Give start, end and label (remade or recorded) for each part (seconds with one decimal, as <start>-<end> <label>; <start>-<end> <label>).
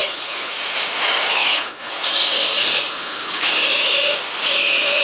0.0-0.5 remade; 0.5-1.3 recorded; 1.3-1.9 remade; 1.9-2.9 recorded; 2.9-3.5 remade; 3.5-5.0 recorded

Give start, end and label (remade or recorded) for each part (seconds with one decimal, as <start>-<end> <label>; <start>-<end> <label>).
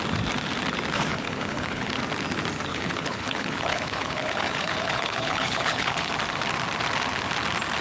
0.0-1.1 recorded; 1.1-2.0 remade; 2.0-2.7 recorded; 2.7-6.1 remade; 6.1-7.8 recorded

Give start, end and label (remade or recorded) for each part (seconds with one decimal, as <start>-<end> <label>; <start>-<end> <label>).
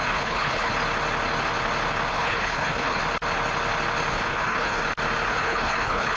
0.0-0.7 remade; 0.7-2.1 recorded; 2.1-3.0 remade; 3.0-4.1 recorded; 4.1-4.8 remade; 4.8-5.3 recorded; 5.3-6.2 remade